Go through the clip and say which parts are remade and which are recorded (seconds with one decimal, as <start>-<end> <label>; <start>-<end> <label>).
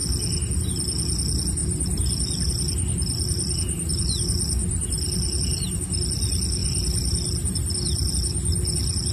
0.0-1.6 recorded; 1.6-2.5 remade; 2.5-6.6 recorded; 6.6-8.1 remade; 8.1-9.1 recorded